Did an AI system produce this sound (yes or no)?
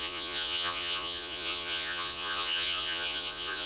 yes